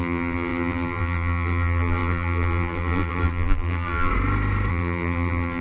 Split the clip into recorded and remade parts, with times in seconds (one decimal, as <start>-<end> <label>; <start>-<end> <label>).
0.0-4.1 remade; 4.1-4.7 recorded; 4.7-5.6 remade